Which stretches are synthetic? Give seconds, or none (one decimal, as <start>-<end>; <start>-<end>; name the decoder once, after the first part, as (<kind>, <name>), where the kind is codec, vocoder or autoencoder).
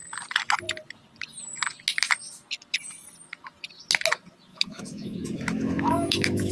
4.5-6.5 (autoencoder, DAC-VAE)